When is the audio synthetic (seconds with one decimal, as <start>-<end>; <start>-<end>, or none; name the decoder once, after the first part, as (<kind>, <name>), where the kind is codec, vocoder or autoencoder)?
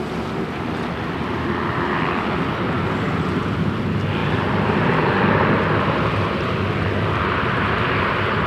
4.2-6.5 (vocoder, BigVGAN v2)